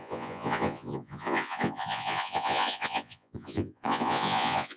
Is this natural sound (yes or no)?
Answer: no